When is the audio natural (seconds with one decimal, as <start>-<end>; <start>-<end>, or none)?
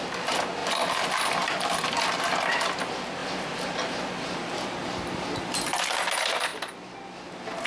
0.0-0.6; 1.8-3.2; 5.8-7.7